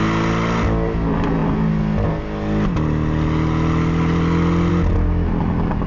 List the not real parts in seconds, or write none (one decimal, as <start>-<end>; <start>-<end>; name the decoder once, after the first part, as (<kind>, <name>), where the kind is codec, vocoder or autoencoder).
none